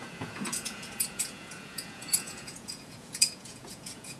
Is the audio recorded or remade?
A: remade